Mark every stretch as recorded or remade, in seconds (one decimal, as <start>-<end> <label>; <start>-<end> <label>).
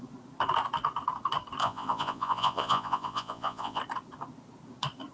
0.0-1.6 recorded; 1.6-3.8 remade; 3.8-5.1 recorded